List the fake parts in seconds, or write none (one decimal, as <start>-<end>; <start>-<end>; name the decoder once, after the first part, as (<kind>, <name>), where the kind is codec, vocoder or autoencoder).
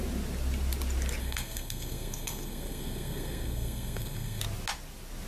1.2-4.4 (codec, SNAC)